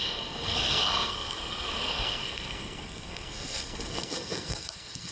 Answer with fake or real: fake